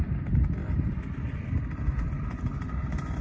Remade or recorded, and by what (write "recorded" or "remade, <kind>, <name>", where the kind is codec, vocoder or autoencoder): recorded